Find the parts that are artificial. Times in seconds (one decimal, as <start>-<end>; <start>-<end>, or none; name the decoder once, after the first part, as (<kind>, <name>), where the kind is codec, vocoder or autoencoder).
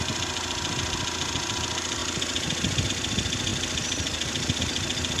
2.0-2.9 (vocoder, BigVGAN v2); 3.5-4.6